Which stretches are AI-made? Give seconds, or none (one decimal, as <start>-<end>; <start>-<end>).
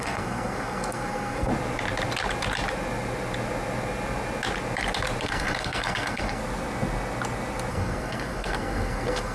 0.0-1.5; 5.2-6.4; 7.7-9.3